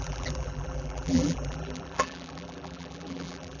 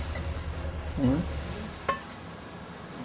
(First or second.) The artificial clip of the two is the first